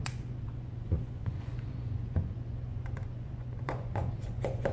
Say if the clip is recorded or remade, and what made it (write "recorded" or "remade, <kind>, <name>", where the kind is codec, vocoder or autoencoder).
remade, vocoder, Vocos